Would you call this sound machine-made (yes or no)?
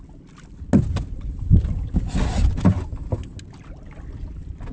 no